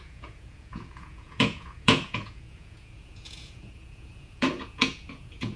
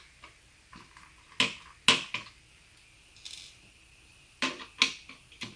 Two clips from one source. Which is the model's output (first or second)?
first